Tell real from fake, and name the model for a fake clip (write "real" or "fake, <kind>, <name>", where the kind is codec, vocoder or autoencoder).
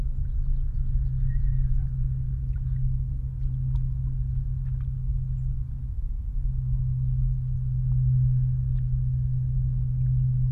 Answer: real